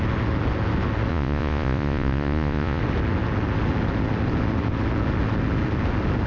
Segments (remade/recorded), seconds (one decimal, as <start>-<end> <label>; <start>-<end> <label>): 0.0-1.1 recorded; 1.1-2.8 remade; 2.8-6.3 recorded